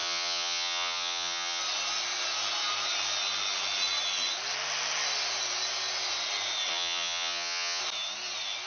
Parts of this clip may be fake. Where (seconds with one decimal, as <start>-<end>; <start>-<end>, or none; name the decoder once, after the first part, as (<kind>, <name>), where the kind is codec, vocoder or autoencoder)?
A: 0.0-1.6 (vocoder, HiFi-GAN); 6.7-7.8